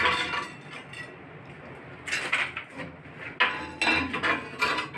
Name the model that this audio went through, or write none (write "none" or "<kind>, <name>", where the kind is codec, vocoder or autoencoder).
none